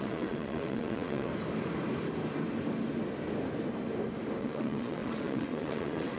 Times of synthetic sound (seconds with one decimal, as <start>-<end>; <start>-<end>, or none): 0.0-1.3; 4.4-6.2